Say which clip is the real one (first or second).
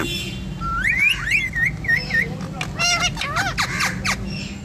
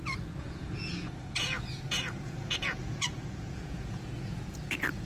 first